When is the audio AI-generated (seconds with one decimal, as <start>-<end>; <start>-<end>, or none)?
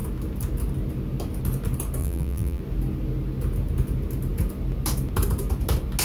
2.0-2.6